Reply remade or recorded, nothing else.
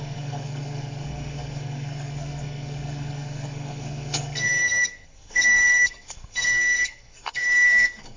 remade